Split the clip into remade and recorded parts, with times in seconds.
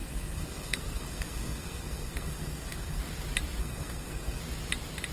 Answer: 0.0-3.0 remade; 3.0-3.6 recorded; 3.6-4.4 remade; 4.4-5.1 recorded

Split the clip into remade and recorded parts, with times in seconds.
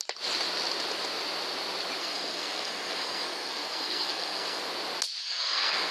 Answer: 0.0-2.0 recorded; 2.0-4.6 remade; 4.6-5.2 recorded; 5.2-5.9 remade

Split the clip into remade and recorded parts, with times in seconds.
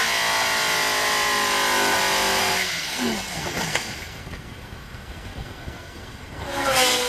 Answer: 0.0-2.4 recorded; 2.4-7.1 remade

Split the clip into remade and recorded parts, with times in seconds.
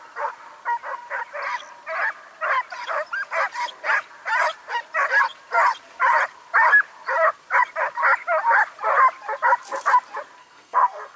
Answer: 0.0-10.4 recorded; 10.4-11.2 remade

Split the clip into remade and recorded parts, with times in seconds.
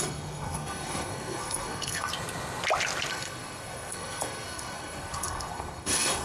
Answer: 0.0-2.1 remade; 2.1-3.1 recorded; 3.1-6.2 remade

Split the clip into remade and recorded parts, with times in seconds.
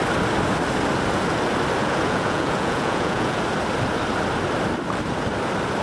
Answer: 0.0-1.8 recorded; 1.8-3.4 remade; 3.4-5.8 recorded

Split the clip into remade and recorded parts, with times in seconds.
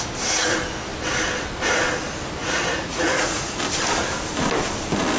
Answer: 0.0-2.4 recorded; 2.4-3.6 remade; 3.6-5.2 recorded